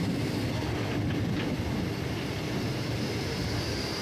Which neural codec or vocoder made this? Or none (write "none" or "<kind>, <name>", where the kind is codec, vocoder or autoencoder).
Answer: none